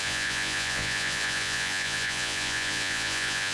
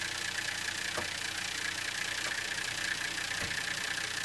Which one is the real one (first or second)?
second